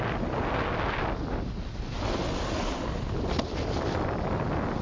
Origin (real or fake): real